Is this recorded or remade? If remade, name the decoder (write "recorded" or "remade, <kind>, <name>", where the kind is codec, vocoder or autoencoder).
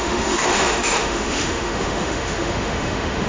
remade, autoencoder, DAC-VAE